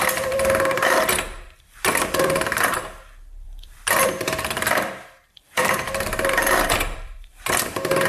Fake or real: fake